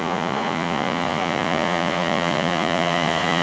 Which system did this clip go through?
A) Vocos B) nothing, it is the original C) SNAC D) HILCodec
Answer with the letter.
A